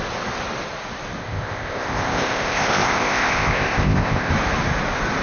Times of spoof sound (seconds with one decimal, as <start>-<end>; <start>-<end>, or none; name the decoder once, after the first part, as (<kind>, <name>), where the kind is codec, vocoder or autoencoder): 1.2-4.3 (codec, ZipCodec)

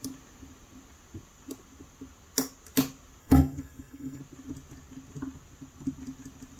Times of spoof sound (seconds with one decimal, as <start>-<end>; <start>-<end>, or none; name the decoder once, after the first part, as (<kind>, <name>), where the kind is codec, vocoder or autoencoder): 3.2-4.2 (codec, SNAC)

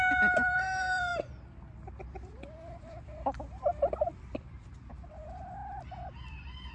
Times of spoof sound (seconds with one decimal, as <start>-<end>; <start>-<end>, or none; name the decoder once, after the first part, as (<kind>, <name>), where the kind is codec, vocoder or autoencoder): 0.0-1.1 (vocoder, BigVGAN v2); 5.1-6.7

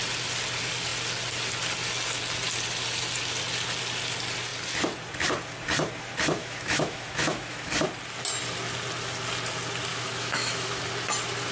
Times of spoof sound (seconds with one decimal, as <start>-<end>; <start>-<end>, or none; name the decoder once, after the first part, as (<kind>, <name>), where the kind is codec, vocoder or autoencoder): 6.4-7.7 (autoencoder, DAC-VAE); 9.9-10.8

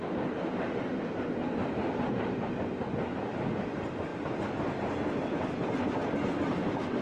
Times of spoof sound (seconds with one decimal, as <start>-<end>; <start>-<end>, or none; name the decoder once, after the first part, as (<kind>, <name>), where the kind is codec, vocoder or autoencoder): 1.6-2.7 (vocoder, BigVGAN v2)

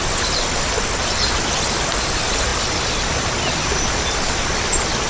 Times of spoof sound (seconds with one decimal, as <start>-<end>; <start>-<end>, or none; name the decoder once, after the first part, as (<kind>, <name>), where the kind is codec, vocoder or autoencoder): none

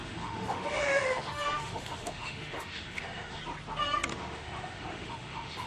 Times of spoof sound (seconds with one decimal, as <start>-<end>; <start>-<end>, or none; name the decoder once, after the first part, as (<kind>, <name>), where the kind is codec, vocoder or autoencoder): 0.0-3.4 (autoencoder, DAC-VAE); 4.1-5.7

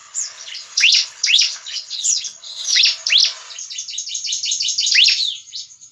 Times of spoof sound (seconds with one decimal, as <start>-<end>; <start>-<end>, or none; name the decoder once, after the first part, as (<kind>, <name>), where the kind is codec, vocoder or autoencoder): 0.0-2.8 (codec, HILCodec)